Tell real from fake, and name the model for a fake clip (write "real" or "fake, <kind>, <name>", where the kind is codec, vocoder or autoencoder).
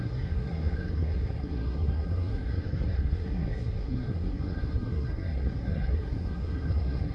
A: fake, codec, SNAC